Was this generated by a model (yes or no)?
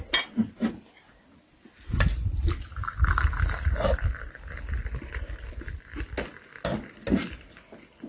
no